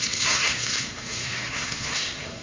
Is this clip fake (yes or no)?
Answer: yes